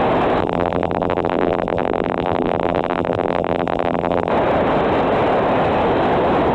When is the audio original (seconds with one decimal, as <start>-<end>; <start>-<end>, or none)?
0.0-0.4; 4.3-6.5